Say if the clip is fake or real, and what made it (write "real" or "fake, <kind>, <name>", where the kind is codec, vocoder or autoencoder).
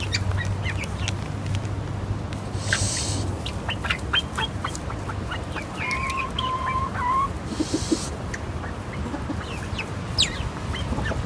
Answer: real